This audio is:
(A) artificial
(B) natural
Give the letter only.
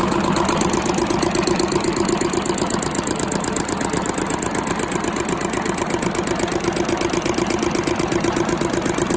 B